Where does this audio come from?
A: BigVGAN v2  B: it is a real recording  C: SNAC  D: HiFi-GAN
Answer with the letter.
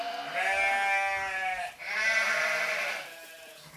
B